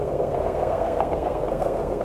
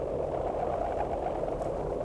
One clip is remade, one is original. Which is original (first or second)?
second